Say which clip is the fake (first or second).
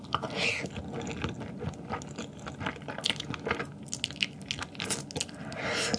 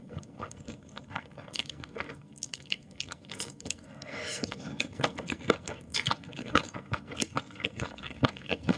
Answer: second